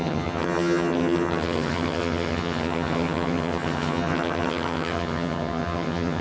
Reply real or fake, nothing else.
fake